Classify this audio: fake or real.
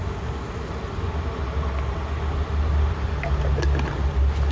real